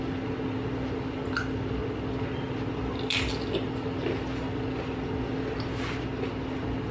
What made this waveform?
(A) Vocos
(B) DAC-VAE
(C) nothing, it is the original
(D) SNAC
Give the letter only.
C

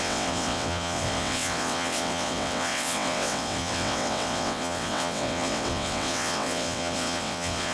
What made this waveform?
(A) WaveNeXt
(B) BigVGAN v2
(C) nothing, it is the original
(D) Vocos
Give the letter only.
A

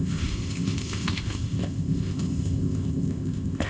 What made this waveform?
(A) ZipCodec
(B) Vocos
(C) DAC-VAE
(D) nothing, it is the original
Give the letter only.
A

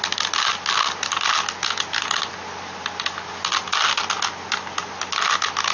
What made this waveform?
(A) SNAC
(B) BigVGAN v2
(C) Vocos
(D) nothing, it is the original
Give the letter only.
D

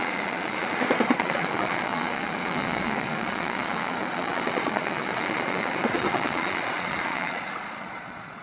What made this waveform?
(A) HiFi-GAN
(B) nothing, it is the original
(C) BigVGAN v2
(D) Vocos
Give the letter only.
D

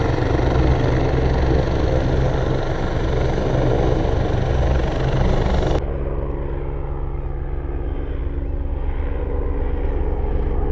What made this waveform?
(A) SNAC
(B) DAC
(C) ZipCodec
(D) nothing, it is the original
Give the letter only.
D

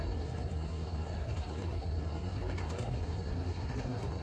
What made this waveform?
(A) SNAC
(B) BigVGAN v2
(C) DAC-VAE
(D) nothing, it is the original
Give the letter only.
A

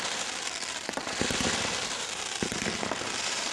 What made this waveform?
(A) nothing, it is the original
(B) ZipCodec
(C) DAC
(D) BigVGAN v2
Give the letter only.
D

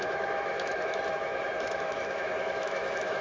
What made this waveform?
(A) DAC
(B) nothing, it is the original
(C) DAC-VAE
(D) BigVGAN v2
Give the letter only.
C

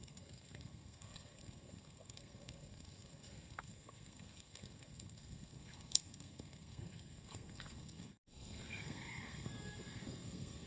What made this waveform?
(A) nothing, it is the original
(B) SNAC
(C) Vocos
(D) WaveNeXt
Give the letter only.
B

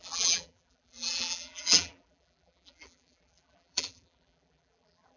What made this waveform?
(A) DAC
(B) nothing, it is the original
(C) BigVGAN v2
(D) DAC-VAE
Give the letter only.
C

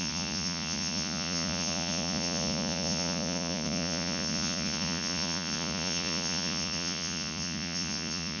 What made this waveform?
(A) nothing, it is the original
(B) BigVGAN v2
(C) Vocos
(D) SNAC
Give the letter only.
C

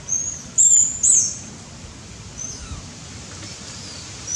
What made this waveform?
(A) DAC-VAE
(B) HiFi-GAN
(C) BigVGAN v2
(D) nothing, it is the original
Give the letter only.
D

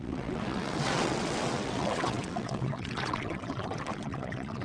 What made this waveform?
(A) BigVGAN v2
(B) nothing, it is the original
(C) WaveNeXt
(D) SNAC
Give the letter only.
C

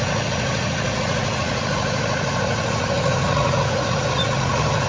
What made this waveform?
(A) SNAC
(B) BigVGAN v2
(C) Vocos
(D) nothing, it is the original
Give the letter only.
C